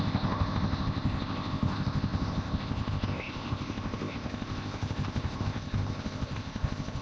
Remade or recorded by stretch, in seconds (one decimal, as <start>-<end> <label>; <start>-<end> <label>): 0.0-7.0 remade